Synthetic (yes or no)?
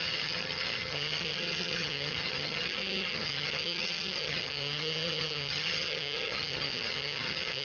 yes